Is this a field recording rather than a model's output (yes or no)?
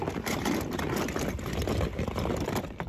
yes